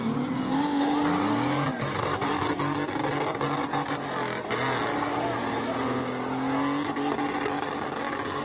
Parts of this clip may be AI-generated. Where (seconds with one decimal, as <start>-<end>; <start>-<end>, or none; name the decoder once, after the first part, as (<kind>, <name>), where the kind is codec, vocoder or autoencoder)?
1.7-2.4 (vocoder, BigVGAN v2)